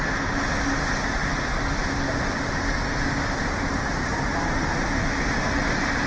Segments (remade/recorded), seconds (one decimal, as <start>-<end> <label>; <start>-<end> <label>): 0.0-4.1 recorded; 4.1-4.7 remade; 4.7-6.1 recorded